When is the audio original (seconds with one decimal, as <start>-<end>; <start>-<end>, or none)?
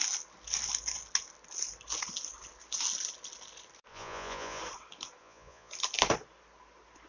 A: 0.0-3.9; 4.6-5.2; 5.7-7.1